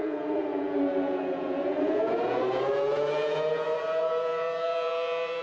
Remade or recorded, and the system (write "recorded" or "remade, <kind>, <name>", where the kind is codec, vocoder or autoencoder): remade, vocoder, Vocos